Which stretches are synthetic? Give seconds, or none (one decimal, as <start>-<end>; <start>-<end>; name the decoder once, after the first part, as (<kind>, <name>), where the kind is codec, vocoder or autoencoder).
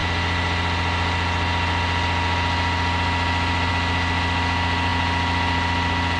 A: none